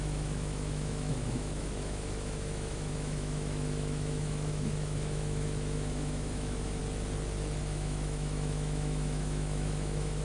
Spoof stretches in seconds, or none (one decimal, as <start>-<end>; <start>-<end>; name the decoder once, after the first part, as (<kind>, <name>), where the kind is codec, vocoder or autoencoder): 0.0-6.8 (autoencoder, DAC-VAE); 7.6-10.2